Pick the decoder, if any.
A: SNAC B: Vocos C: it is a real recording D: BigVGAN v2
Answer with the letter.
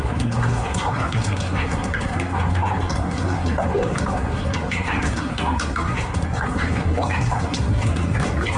A